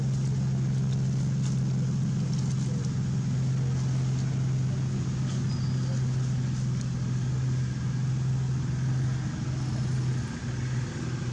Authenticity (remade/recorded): recorded